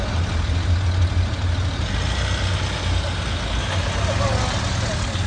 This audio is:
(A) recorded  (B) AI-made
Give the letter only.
A